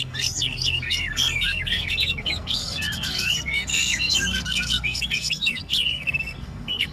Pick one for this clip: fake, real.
fake